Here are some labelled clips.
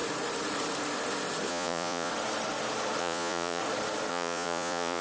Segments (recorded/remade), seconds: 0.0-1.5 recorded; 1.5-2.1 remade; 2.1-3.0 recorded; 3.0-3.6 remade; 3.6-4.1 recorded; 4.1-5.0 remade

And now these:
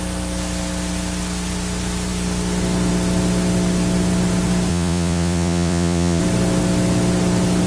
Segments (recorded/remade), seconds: 0.0-4.7 recorded; 4.7-6.2 remade; 6.2-7.7 recorded

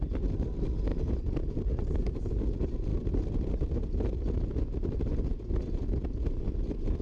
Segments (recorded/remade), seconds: 0.0-0.9 recorded; 0.9-2.3 remade; 2.3-7.0 recorded

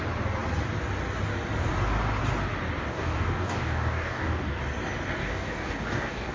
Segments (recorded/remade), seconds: 0.0-2.9 recorded; 2.9-4.6 remade; 4.6-5.2 recorded; 5.2-6.3 remade

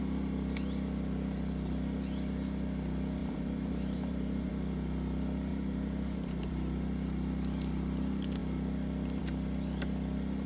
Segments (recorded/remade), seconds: 0.0-3.2 recorded; 3.2-4.5 remade; 4.5-5.5 recorded; 5.5-6.5 remade; 6.5-10.5 recorded

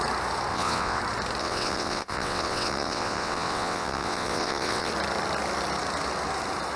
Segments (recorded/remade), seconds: 0.0-0.5 recorded; 0.5-1.0 remade; 1.0-1.4 recorded; 1.4-4.9 remade; 4.9-6.8 recorded

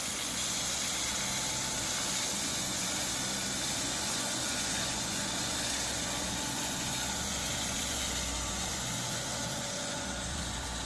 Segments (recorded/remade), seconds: 0.0-0.8 remade; 0.8-2.3 recorded; 2.3-3.1 remade; 3.1-3.8 recorded; 3.8-10.9 remade